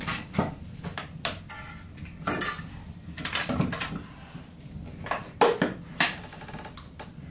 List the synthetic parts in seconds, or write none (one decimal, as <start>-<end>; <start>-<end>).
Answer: none